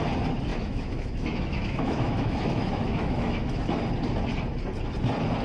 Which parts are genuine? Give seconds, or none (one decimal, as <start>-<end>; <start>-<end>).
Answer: 0.0-0.5; 3.7-5.4